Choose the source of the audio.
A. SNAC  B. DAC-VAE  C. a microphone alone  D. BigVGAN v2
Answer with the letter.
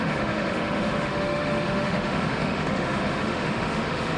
B